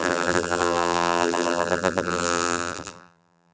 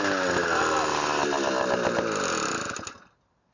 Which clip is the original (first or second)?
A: second